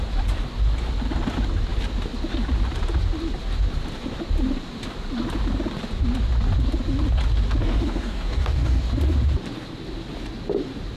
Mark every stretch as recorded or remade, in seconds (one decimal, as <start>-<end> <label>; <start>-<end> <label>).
0.0-7.6 recorded; 7.6-8.8 remade; 8.8-11.0 recorded